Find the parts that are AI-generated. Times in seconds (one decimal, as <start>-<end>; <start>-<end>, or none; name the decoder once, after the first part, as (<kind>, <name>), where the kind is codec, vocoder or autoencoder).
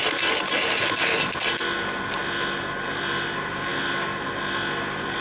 0.0-3.7 (vocoder, BigVGAN v2)